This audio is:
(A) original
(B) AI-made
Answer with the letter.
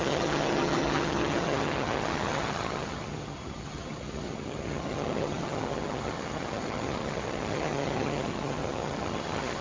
B